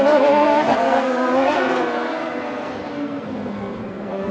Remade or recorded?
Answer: remade